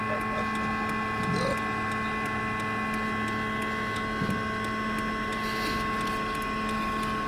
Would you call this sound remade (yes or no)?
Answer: no